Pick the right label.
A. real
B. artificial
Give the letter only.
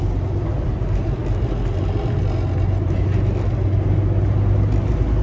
A